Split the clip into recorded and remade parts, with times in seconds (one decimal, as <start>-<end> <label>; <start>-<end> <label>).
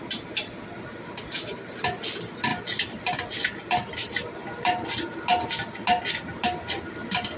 0.0-0.9 recorded; 0.9-1.7 remade; 1.7-7.4 recorded